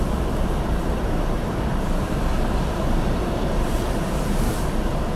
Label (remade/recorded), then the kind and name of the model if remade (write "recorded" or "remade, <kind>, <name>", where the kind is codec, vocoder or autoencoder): remade, vocoder, BigVGAN v2